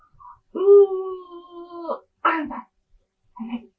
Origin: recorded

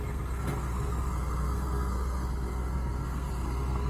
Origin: remade